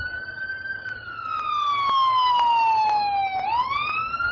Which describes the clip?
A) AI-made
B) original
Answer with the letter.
B